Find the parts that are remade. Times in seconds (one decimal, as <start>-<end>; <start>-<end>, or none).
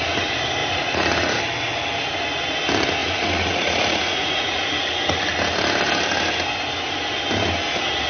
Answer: 0.6-1.4; 3.0-5.2